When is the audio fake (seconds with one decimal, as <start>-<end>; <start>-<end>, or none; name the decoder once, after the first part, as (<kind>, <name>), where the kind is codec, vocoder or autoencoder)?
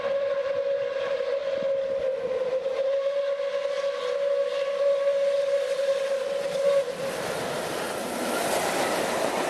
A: none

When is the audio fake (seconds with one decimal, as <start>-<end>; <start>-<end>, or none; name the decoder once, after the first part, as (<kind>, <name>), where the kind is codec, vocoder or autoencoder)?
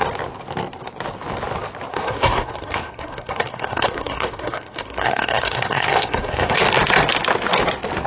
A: 1.9-6.6 (codec, SNAC)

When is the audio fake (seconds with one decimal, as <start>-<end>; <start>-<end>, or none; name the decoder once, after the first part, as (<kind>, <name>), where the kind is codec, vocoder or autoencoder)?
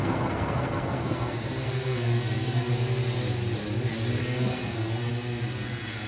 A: 0.0-2.7 (codec, SNAC); 4.2-5.1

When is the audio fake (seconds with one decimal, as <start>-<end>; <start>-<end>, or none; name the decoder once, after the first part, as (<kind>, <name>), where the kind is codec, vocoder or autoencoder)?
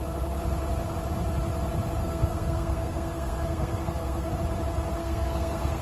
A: 2.0-4.3 (codec, SNAC); 5.0-5.8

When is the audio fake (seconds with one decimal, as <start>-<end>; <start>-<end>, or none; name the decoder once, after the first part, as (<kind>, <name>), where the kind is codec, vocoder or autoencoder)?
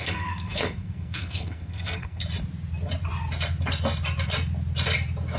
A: 0.0-2.2 (codec, SNAC)